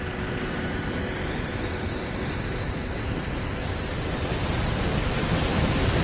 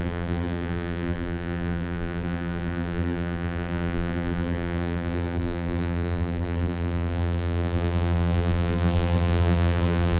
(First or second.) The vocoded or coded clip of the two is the second